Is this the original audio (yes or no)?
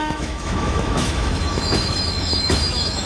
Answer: no